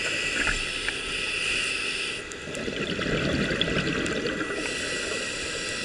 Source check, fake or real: real